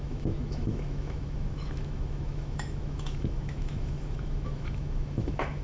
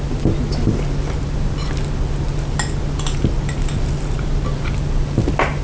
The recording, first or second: second